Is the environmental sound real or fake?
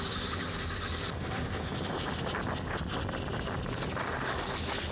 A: real